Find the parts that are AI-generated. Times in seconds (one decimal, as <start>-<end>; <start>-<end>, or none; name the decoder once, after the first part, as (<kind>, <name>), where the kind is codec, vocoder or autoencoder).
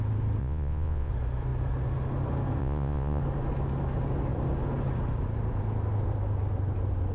0.4-1.1 (vocoder, Vocos); 2.6-3.2